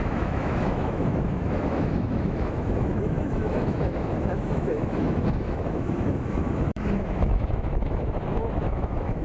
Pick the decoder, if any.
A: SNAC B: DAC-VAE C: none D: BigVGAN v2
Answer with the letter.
B